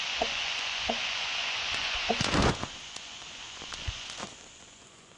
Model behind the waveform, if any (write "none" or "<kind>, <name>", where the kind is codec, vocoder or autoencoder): vocoder, Vocos